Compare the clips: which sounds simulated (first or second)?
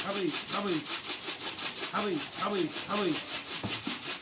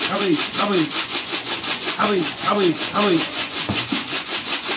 second